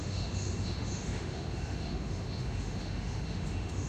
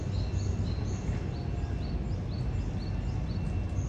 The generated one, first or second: first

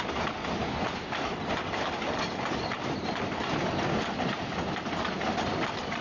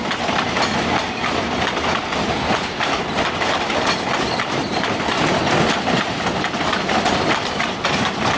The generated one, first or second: second